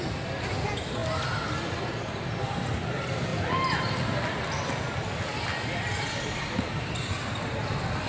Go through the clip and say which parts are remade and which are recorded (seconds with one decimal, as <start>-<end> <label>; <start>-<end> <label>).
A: 0.0-8.1 recorded